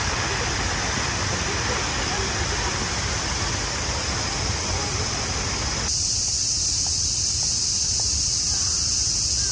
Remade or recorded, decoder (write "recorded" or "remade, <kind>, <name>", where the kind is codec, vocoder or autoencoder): recorded